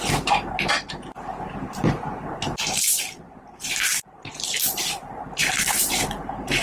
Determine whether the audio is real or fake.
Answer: fake